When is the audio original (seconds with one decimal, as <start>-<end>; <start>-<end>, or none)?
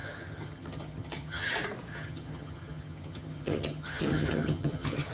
1.5-1.9